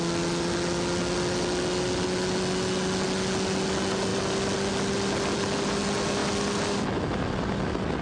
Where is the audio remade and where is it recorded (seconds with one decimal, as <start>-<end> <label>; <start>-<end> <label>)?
0.0-8.0 recorded